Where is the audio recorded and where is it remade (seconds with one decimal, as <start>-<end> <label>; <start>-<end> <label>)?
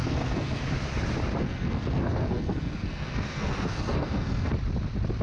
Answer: 0.0-0.6 remade; 0.6-1.4 recorded; 1.4-4.5 remade; 4.5-5.2 recorded